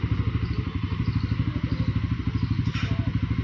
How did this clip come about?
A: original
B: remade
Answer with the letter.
A